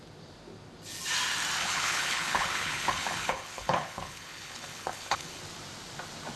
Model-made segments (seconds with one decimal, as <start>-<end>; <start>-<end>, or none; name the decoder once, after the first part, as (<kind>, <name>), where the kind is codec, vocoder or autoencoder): 1.6-5.4 (codec, HILCodec)

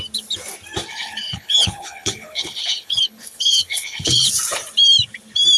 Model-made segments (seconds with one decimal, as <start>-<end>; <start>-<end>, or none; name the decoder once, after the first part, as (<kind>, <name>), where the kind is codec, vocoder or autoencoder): 0.9-4.3 (codec, HILCodec)

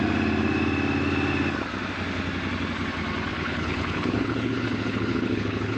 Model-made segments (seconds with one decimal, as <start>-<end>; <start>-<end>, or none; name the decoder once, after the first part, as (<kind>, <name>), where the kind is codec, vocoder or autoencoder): 3.3-5.8 (codec, HILCodec)

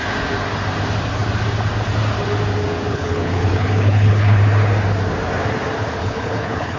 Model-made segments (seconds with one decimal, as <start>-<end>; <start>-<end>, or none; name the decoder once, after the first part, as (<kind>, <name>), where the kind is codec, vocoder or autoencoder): 2.9-4.4 (codec, HILCodec); 6.0-6.8

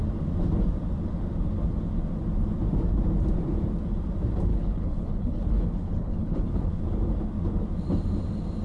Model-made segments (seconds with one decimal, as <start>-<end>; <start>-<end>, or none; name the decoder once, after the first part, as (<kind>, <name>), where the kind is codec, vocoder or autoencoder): 4.5-6.8 (codec, HILCodec)